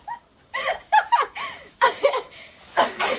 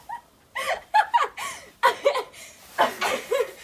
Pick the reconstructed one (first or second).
first